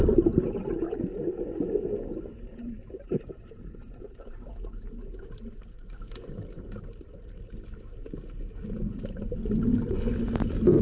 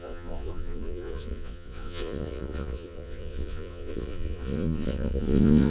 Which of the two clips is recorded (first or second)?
first